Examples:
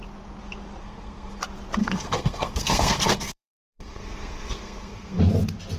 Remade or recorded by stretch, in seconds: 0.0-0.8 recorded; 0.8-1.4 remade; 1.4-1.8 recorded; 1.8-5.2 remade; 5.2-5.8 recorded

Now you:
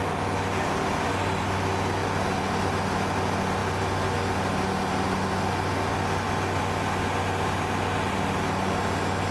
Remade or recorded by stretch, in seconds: 0.0-9.3 recorded

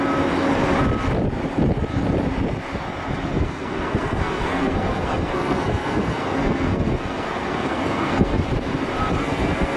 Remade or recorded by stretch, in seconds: 0.0-3.3 recorded; 3.3-8.4 remade; 8.4-9.2 recorded; 9.2-9.8 remade

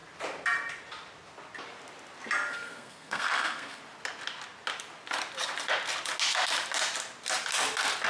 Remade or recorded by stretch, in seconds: 0.0-2.5 recorded; 2.5-3.8 remade; 3.8-8.1 recorded

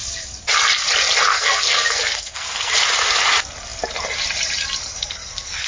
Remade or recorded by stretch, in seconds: 0.0-1.3 recorded; 1.3-2.7 remade; 2.7-4.9 recorded; 4.9-5.7 remade

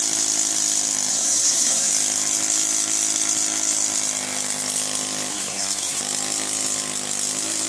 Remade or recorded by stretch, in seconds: 0.0-1.1 recorded; 1.1-1.9 remade; 1.9-5.3 recorded; 5.3-6.0 remade; 6.0-7.7 recorded

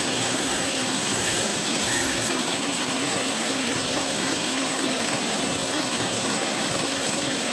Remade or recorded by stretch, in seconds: 0.0-7.5 remade